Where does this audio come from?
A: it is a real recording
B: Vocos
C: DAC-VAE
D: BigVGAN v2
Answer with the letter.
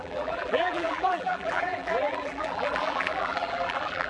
D